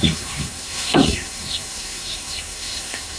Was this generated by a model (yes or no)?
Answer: yes